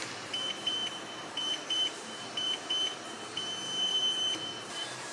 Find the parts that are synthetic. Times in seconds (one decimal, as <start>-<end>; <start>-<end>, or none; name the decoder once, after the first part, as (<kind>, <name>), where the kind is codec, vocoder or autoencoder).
0.0-5.1 (vocoder, BigVGAN v2)